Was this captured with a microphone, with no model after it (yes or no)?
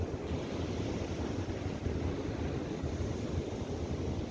yes